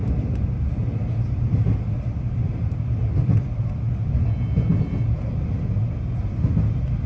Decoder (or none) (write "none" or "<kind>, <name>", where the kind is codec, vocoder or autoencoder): none